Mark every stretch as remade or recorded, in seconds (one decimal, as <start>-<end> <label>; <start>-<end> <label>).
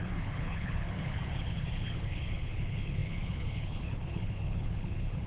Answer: 0.0-5.3 remade